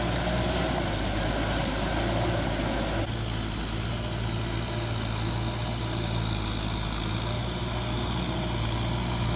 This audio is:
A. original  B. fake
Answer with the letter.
A